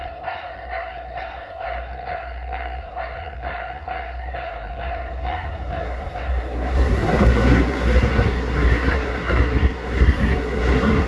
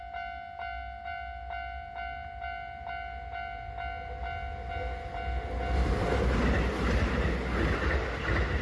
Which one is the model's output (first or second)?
first